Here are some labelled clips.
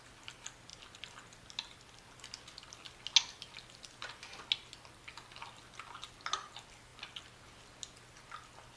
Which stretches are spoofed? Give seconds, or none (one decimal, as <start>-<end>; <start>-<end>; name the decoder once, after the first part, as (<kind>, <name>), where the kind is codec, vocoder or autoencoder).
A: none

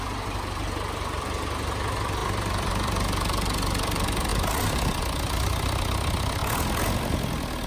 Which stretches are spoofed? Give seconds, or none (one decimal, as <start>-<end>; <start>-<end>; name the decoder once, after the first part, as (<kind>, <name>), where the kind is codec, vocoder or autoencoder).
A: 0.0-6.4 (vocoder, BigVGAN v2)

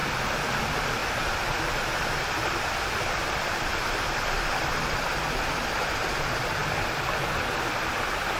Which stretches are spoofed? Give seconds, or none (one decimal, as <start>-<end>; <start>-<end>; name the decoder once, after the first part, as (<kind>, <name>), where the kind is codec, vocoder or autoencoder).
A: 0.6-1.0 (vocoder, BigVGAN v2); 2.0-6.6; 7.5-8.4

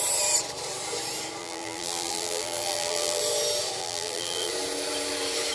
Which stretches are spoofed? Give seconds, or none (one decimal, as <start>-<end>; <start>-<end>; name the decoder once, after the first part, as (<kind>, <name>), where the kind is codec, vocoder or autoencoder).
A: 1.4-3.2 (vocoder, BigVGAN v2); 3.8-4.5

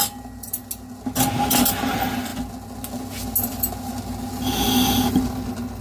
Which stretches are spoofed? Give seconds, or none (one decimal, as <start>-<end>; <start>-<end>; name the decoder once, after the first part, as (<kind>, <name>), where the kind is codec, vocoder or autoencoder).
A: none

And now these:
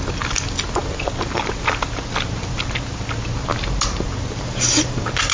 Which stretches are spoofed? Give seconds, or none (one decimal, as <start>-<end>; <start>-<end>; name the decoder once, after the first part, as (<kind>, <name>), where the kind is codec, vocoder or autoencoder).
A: none

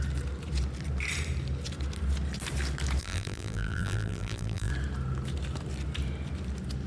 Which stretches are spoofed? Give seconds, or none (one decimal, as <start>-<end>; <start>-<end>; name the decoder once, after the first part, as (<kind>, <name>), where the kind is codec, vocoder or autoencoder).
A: 3.0-4.7 (vocoder, BigVGAN v2)

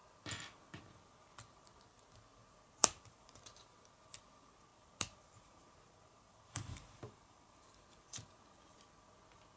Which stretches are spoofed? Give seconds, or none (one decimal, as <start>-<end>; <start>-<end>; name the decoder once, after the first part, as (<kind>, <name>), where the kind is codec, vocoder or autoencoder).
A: 2.8-3.4 (vocoder, BigVGAN v2); 4.7-7.6